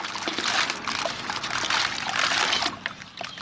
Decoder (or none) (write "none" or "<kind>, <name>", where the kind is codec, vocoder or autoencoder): none